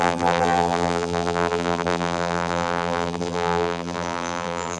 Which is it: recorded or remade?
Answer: remade